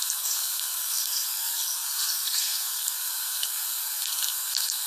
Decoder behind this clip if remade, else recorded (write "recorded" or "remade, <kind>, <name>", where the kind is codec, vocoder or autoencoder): remade, codec, SNAC